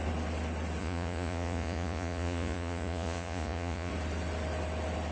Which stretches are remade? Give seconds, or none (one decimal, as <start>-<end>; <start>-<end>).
0.8-3.9